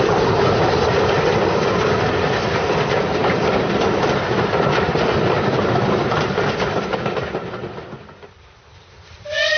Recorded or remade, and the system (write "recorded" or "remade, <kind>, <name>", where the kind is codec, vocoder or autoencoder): remade, vocoder, BigVGAN v2